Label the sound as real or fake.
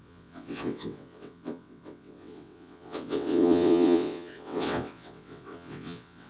fake